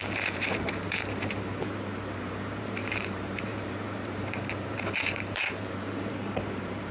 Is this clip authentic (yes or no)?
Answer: no